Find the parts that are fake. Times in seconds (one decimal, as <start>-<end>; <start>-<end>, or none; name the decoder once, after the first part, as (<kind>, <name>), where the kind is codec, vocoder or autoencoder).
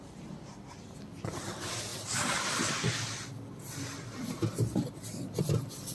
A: 0.0-5.9 (vocoder, BigVGAN v2)